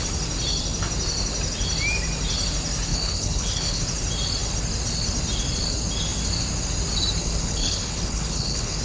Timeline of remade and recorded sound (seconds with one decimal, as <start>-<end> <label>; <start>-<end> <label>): 0.0-2.9 recorded; 2.9-3.8 remade; 3.8-7.2 recorded; 7.2-8.8 remade